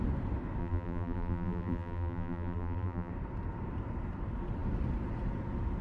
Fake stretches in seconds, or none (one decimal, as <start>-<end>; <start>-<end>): 0.6-3.1